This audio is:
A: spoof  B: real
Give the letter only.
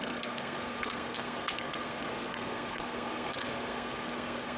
A